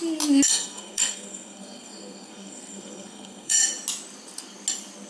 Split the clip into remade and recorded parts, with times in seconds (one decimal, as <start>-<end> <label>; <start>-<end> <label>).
0.0-0.5 recorded; 0.5-3.6 remade; 3.6-5.1 recorded